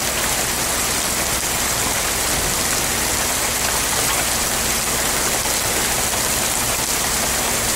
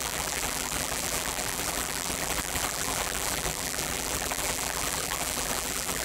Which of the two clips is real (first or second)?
first